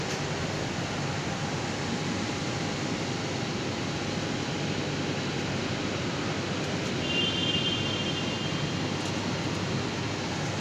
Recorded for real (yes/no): yes